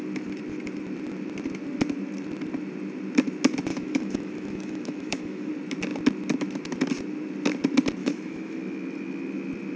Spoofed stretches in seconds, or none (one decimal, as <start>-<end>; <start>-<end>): 3.7-5.5; 8.0-8.6